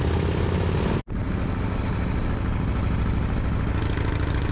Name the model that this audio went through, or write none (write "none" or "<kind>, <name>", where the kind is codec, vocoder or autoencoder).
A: none